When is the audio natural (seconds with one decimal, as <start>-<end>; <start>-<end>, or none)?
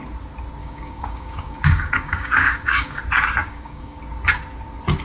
0.0-0.6; 3.0-3.4; 4.0-5.0